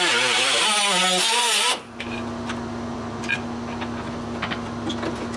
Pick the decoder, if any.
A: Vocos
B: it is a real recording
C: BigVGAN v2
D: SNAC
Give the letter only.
B